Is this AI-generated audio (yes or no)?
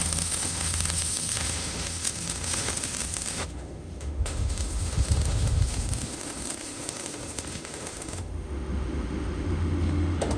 yes